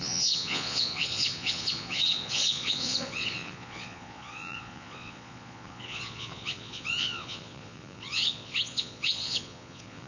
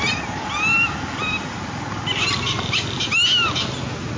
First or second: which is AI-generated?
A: first